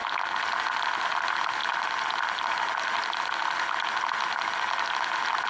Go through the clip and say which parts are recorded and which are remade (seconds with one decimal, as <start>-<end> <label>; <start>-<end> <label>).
0.0-5.5 recorded